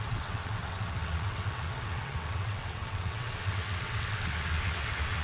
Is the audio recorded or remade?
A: remade